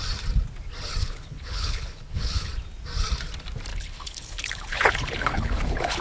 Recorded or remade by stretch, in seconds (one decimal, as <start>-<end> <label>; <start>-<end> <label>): 0.0-1.0 recorded; 1.0-2.5 remade; 2.5-3.7 recorded; 3.7-6.0 remade